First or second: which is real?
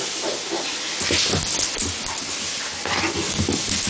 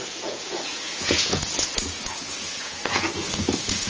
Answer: first